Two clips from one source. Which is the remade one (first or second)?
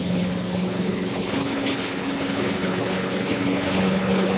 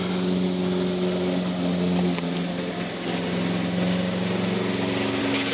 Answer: first